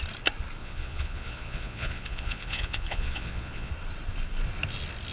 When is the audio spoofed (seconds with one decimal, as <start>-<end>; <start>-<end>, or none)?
0.6-3.7